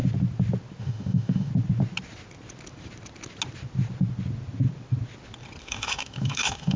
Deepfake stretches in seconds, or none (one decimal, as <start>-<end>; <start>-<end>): 0.8-1.5; 5.6-6.8